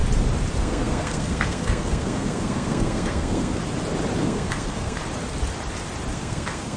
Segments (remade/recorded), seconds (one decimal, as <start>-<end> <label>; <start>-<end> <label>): 0.0-0.6 recorded; 0.6-3.6 remade; 3.6-4.2 recorded; 4.2-5.0 remade; 5.0-6.1 recorded; 6.1-6.8 remade